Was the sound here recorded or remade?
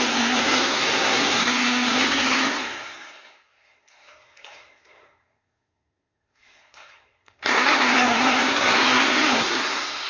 remade